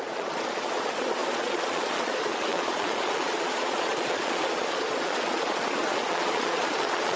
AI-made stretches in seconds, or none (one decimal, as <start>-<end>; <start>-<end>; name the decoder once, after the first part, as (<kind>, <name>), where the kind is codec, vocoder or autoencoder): 0.0-7.2 (vocoder, Vocos)